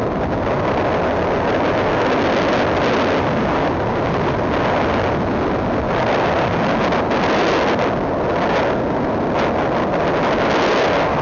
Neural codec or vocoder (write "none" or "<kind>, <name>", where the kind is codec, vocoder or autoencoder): none